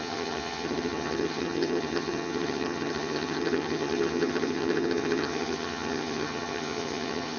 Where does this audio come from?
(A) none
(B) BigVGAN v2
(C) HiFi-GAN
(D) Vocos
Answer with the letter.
C